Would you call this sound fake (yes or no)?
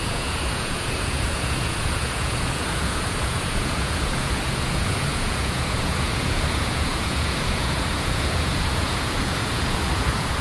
yes